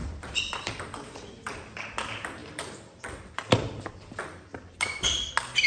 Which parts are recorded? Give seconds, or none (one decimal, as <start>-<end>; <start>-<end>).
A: 0.7-2.4; 5.3-5.7